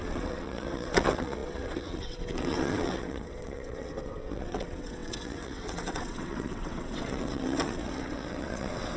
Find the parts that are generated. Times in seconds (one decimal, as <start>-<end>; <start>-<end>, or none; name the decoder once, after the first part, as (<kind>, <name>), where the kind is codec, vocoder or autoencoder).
0.0-9.0 (vocoder, WaveNeXt)